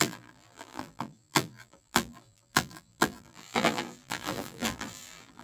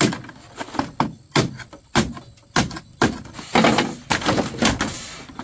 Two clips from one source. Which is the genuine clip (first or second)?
second